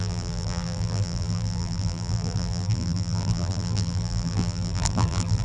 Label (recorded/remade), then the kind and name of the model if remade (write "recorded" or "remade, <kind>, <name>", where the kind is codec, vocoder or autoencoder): remade, vocoder, BigVGAN v2